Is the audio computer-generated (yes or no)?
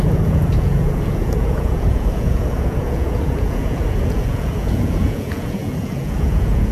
yes